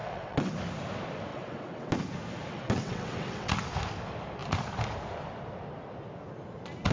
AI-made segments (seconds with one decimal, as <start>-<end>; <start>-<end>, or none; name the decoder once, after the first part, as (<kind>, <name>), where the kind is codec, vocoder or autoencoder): 0.0-0.5 (vocoder, WaveNeXt); 1.3-1.9; 2.5-3.5